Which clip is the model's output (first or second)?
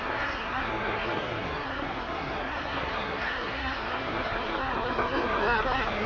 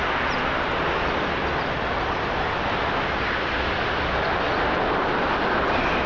first